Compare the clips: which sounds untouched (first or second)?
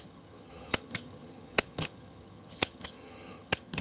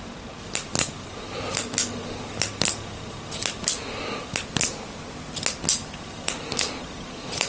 second